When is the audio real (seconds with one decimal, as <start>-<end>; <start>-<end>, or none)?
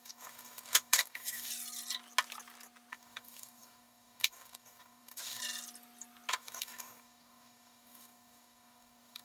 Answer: 1.5-2.9; 5.4-6.3